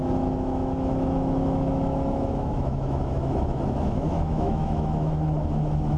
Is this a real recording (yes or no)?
no